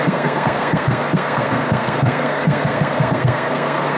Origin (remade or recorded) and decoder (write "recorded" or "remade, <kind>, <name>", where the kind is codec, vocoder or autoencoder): remade, codec, SNAC